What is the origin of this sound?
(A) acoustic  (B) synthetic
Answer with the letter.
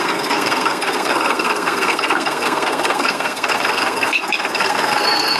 B